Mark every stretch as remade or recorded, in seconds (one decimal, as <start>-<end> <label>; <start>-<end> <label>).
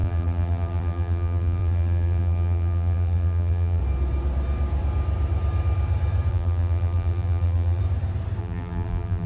0.0-3.8 remade; 3.8-6.3 recorded; 6.3-7.8 remade; 7.8-8.4 recorded; 8.4-9.3 remade